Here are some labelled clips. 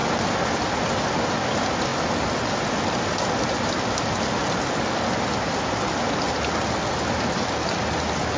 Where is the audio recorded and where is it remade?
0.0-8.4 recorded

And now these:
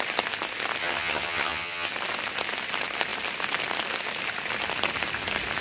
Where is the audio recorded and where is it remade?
0.0-0.8 recorded; 0.8-1.9 remade; 1.9-5.6 recorded

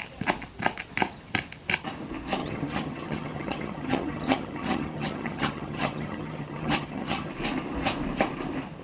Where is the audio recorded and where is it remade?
0.0-2.4 recorded; 2.4-7.3 remade; 7.3-8.8 recorded